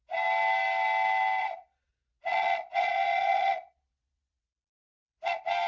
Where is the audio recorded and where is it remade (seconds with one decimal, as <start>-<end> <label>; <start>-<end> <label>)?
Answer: 0.0-1.4 recorded; 1.4-1.9 remade; 1.9-2.3 recorded; 2.3-4.4 remade; 4.4-5.7 recorded